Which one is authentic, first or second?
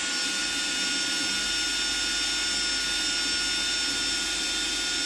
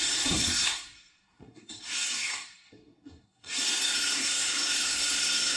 first